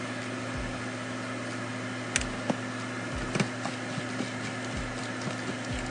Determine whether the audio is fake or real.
real